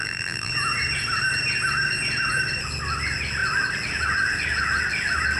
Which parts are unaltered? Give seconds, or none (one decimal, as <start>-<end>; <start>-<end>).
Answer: 0.5-5.4